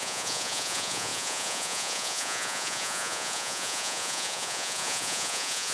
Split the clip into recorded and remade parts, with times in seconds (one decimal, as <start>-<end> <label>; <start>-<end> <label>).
0.0-5.7 remade